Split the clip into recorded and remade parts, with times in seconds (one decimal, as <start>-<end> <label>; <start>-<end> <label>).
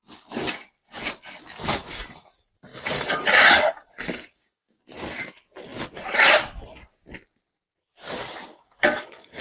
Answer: 0.0-1.6 recorded; 1.6-2.3 remade; 2.3-2.7 recorded; 2.7-4.8 remade; 4.8-8.5 recorded; 8.5-9.4 remade